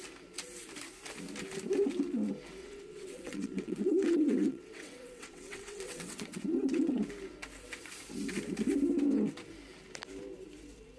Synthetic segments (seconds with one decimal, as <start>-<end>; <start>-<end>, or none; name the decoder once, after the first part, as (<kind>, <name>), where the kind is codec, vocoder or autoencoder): 2.6-7.0 (vocoder, WaveNeXt)